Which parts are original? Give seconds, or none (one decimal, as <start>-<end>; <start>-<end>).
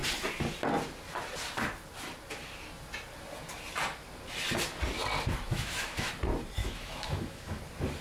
0.0-5.5; 6.1-6.6; 7.6-8.0